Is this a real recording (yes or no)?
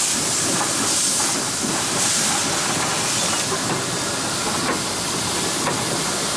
yes